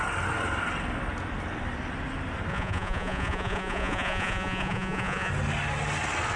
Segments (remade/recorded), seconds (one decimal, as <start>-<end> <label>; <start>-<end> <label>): 0.0-2.5 recorded; 2.5-5.3 remade; 5.3-6.4 recorded